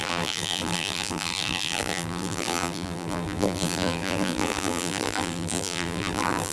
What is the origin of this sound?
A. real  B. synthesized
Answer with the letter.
B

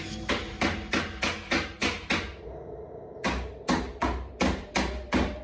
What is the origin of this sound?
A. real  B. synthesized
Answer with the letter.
A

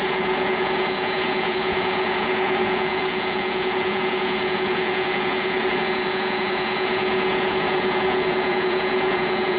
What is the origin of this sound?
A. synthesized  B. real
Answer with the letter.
A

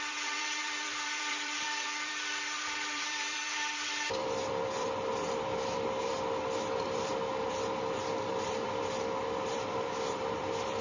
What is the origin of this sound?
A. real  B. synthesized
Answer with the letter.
B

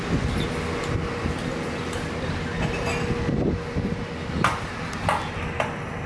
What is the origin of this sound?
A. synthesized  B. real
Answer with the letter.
B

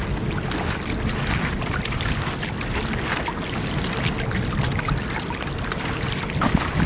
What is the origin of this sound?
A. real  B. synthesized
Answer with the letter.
A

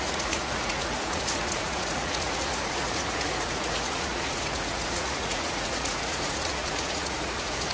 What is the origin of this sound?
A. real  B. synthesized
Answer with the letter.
B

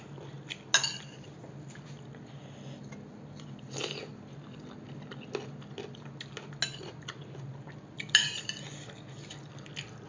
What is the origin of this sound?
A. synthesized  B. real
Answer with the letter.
B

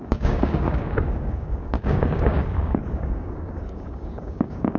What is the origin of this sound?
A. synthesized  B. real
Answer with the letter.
A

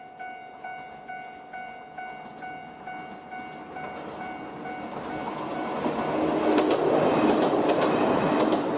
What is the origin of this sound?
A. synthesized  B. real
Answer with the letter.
B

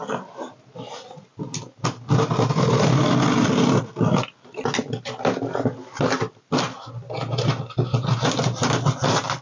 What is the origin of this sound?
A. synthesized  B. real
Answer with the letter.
B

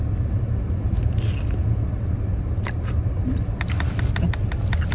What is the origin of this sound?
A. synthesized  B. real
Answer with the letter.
B